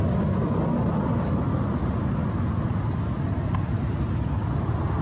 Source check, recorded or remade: recorded